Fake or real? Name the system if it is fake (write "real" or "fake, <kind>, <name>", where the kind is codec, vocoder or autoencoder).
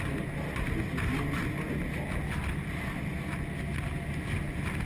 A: real